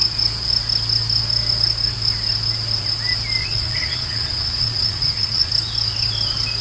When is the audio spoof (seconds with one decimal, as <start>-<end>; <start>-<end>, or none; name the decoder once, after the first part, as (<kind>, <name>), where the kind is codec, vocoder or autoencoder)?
3.4-5.5 (vocoder, Vocos)